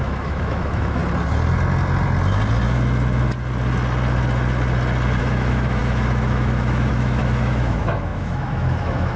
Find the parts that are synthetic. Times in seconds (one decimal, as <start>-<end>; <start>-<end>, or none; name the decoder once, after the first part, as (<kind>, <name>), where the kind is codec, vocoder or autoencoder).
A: 0.0-1.0 (autoencoder, DAC-VAE); 5.2-9.2